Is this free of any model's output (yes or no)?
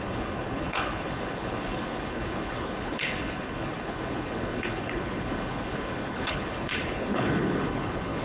no